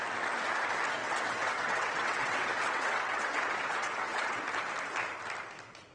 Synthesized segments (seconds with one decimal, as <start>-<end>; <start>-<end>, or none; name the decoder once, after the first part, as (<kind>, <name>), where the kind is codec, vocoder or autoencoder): 1.0-4.4 (vocoder, WaveNeXt)